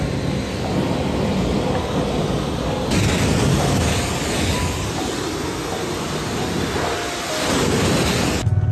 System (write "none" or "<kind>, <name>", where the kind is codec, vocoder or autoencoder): none